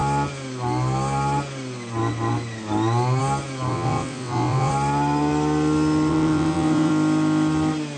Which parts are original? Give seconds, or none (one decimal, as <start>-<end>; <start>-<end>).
0.0-3.7; 4.7-6.1; 6.9-8.0